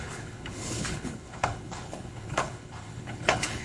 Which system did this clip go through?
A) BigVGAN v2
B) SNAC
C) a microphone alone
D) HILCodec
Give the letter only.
D